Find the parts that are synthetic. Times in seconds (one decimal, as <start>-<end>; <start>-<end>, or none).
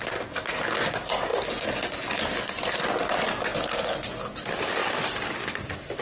none